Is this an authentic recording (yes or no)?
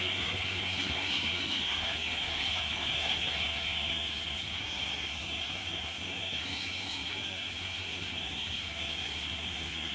no